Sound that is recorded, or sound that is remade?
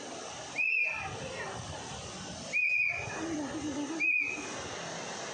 recorded